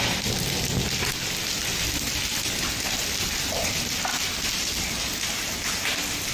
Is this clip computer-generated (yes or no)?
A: no